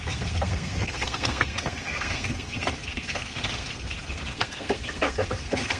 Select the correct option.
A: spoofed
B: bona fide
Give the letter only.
A